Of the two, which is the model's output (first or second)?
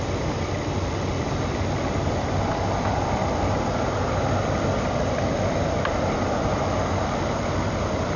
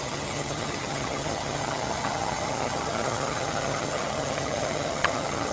second